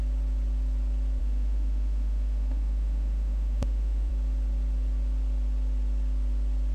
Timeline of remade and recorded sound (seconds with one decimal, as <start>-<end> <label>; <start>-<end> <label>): 0.0-1.2 recorded; 1.2-4.1 remade; 4.1-6.7 recorded